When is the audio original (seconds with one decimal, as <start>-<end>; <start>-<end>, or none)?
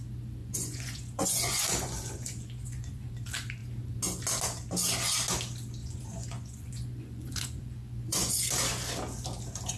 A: 0.0-0.4; 3.1-5.8; 8.5-9.8